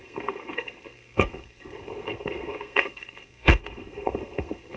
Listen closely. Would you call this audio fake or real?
fake